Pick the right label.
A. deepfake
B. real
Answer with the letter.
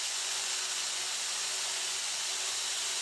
A